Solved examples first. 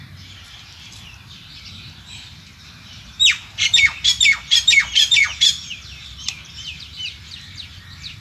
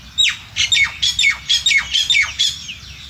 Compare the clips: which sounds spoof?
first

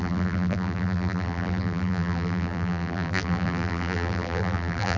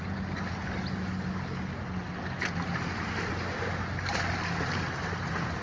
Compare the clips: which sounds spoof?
first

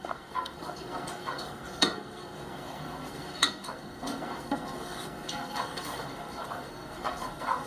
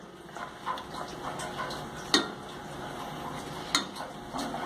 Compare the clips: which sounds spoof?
first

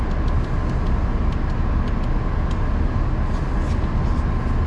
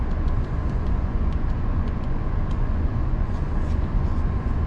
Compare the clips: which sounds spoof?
second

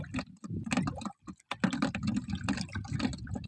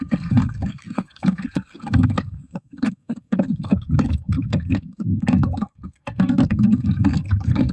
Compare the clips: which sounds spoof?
second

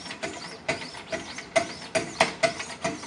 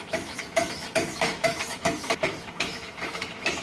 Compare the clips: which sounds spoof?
second